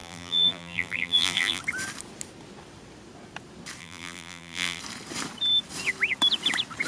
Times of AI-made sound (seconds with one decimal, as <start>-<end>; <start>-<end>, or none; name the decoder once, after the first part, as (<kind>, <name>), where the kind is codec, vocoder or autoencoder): 0.0-1.6 (vocoder, BigVGAN v2); 3.8-4.8